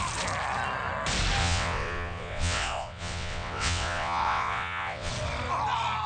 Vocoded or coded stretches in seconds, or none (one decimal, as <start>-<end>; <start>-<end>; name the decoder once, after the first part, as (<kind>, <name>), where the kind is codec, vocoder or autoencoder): 1.4-5.1 (vocoder, WaveNeXt)